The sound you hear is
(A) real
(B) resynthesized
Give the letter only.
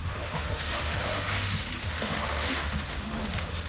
B